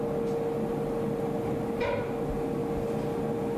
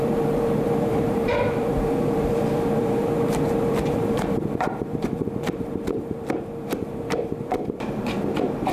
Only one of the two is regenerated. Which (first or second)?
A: second